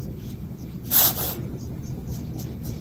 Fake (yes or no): no